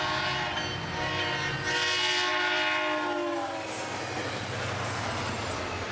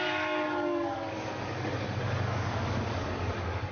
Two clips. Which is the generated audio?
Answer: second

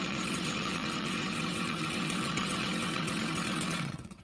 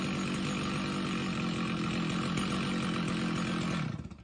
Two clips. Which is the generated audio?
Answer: first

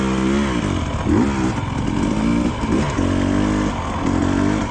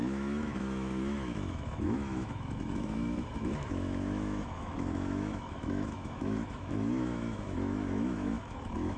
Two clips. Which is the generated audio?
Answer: second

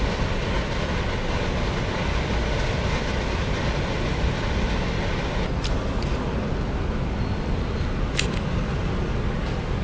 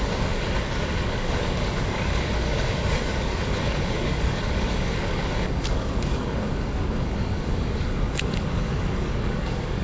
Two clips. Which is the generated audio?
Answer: second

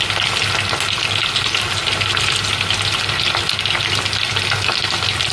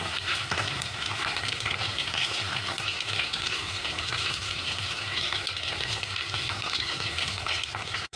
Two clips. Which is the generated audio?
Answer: second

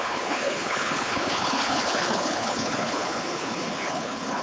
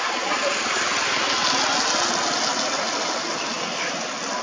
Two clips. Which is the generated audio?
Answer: first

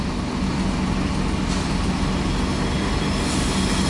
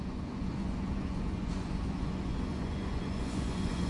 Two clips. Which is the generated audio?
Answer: second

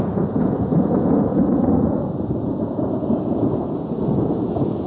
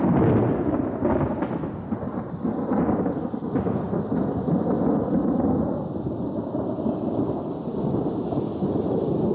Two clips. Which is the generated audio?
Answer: first